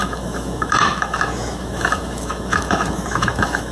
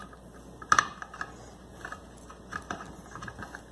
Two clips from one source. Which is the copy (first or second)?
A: first